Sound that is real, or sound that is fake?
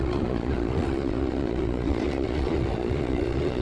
fake